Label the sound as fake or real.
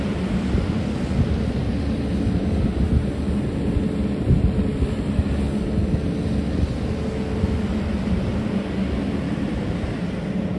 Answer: real